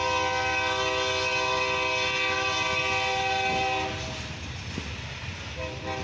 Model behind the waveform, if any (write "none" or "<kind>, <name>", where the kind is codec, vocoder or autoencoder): none